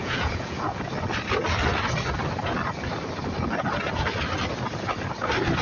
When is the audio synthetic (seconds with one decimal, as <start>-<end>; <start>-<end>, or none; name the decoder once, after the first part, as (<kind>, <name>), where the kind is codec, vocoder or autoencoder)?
0.0-0.9 (vocoder, Vocos)

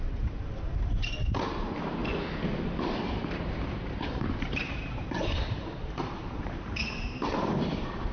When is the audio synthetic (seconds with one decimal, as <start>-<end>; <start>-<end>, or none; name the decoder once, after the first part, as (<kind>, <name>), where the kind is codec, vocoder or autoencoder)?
0.0-2.0 (vocoder, BigVGAN v2); 2.9-8.1

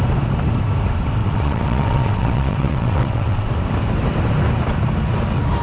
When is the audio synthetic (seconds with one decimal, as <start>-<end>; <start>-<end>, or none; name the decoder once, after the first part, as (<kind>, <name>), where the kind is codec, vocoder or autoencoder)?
1.2-3.5 (vocoder, WaveNeXt)